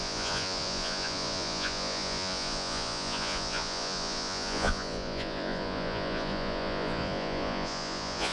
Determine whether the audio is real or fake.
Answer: fake